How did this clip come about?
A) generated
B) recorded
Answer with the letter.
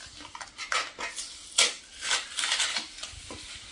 B